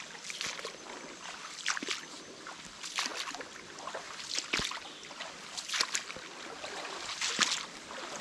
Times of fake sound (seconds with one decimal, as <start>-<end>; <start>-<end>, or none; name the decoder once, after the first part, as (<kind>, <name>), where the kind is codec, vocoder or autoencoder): none